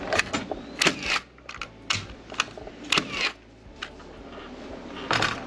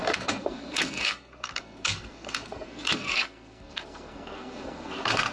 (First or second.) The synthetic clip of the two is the second